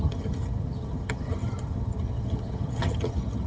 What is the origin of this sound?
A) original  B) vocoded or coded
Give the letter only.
B